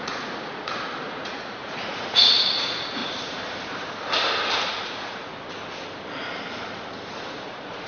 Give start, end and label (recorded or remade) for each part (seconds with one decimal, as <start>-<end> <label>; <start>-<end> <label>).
0.0-3.0 remade; 3.0-4.7 recorded; 4.7-5.3 remade; 5.3-7.1 recorded; 7.1-7.9 remade